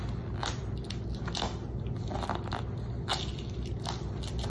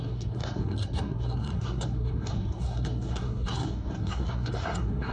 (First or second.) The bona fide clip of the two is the first